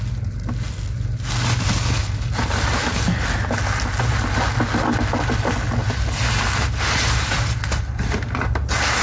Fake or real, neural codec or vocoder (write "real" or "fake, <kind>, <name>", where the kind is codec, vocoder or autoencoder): real